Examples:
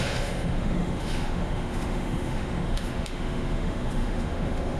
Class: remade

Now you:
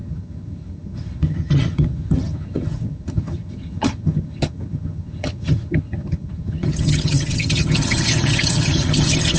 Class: remade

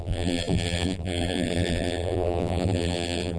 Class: remade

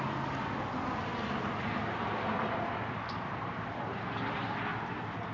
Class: recorded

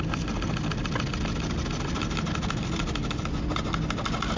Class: recorded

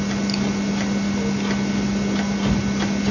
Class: recorded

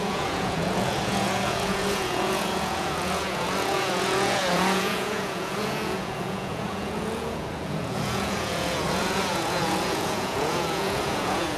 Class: remade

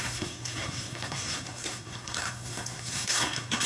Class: remade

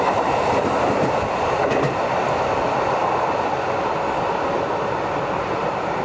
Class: recorded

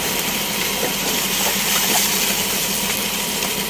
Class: remade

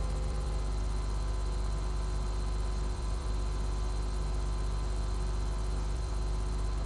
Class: remade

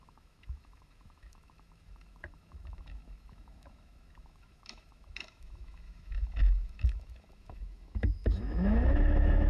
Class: remade